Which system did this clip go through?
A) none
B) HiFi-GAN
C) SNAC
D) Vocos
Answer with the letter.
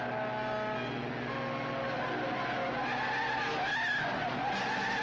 A